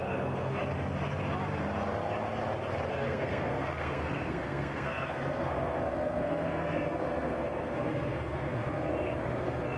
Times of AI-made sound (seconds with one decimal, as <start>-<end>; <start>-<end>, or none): 0.0-0.6; 2.9-8.9; 9.4-9.8